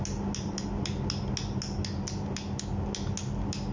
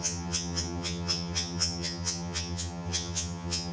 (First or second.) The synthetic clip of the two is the second